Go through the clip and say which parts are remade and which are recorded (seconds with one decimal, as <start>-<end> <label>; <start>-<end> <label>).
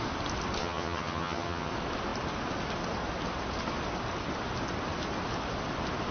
0.0-0.6 recorded; 0.6-1.7 remade; 1.7-6.1 recorded